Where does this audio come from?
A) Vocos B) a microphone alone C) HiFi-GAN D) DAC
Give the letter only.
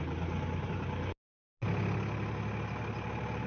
B